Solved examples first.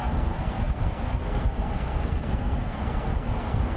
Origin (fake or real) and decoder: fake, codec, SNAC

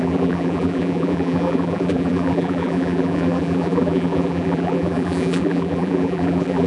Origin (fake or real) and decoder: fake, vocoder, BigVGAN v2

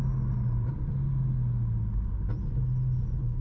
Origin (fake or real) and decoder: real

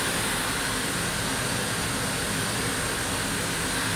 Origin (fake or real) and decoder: real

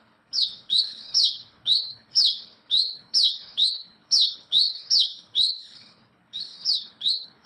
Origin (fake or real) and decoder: fake, codec, HILCodec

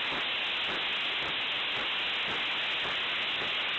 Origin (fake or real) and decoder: real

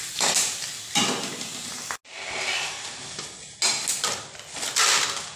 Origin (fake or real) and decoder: real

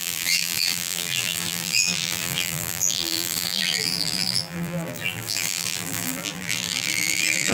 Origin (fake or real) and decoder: fake, vocoder, BigVGAN v2